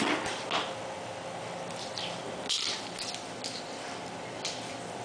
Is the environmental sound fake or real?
real